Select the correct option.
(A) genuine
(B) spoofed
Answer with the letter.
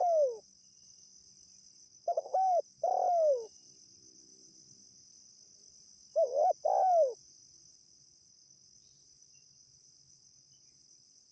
A